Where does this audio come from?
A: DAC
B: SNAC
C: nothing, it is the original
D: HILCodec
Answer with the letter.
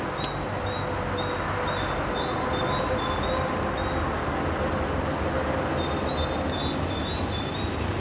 C